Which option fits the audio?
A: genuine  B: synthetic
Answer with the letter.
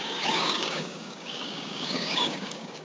B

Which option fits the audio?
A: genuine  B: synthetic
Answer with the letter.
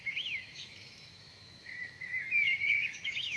B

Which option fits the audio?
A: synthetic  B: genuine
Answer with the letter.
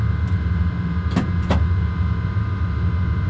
B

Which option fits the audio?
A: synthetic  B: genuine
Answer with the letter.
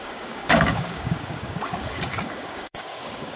A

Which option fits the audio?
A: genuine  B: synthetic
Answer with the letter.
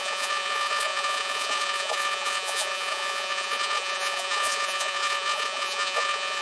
B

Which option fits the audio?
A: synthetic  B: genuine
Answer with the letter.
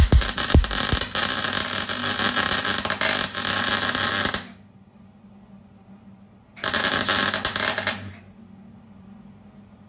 B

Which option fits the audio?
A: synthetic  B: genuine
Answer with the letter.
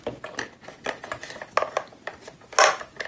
B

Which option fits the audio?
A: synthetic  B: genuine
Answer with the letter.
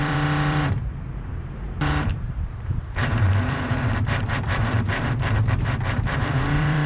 A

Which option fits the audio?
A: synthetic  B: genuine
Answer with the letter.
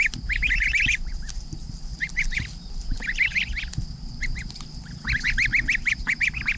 B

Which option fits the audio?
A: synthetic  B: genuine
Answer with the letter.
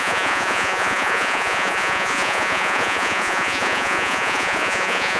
A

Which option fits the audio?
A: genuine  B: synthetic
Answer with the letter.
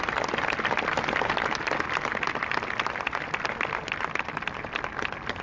A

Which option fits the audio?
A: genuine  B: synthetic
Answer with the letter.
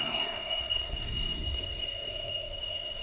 B